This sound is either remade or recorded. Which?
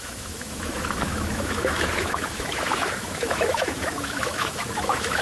remade